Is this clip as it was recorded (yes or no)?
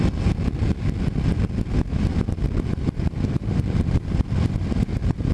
yes